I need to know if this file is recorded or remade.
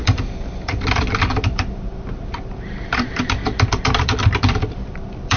remade